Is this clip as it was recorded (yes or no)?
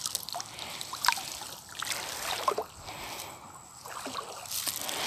yes